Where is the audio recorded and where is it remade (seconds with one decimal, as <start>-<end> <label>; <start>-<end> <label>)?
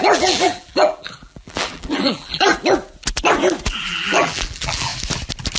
0.0-2.5 remade; 2.5-3.9 recorded; 3.9-4.9 remade; 4.9-5.6 recorded